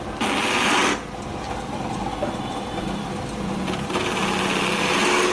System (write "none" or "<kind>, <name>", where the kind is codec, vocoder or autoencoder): none